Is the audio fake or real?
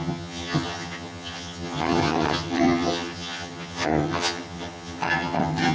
fake